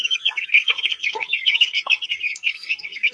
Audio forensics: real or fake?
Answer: fake